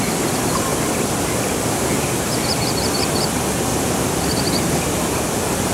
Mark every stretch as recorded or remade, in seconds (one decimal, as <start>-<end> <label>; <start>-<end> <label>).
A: 0.0-3.7 recorded; 3.7-4.6 remade; 4.6-5.7 recorded